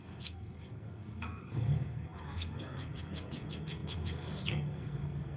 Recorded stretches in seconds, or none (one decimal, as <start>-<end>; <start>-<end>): none